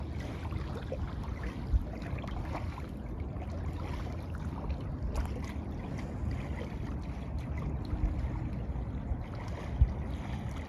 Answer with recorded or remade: recorded